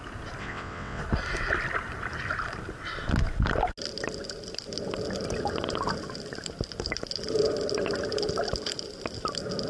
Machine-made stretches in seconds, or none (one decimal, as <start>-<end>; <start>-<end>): 0.4-1.0